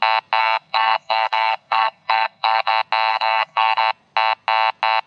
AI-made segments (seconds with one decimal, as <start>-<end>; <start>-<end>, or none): 0.4-2.7; 3.1-3.8